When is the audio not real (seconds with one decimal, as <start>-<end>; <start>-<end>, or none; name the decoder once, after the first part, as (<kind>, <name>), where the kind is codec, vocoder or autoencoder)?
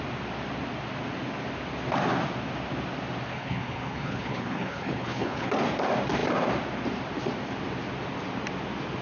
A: 3.3-5.5 (codec, HILCodec)